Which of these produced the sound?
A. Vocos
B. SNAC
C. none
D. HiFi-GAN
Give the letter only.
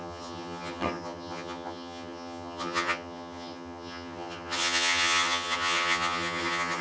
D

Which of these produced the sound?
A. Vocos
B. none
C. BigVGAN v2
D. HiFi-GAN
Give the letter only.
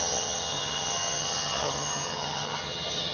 D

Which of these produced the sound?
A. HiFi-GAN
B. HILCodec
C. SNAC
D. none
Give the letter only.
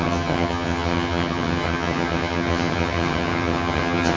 A